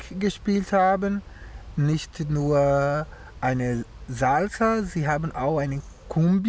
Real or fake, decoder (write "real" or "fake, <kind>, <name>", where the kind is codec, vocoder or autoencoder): real